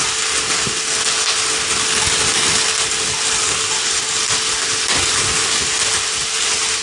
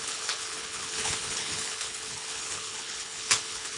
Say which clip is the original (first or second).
first